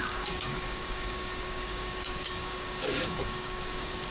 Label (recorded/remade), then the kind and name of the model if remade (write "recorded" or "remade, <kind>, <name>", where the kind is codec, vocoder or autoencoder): remade, codec, DAC